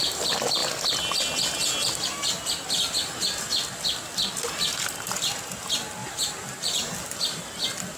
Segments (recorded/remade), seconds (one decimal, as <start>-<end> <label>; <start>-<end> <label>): 0.0-6.0 recorded; 6.0-7.4 remade; 7.4-8.0 recorded